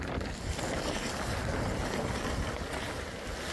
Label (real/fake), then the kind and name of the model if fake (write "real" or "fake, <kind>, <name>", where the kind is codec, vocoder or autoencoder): real